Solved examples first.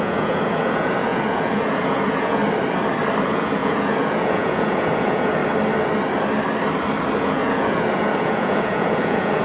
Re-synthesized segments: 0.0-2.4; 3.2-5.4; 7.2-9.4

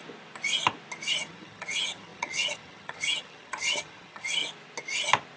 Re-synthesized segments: 1.2-4.4